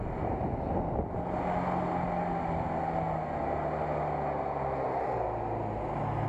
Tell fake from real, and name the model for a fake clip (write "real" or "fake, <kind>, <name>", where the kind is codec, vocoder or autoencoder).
real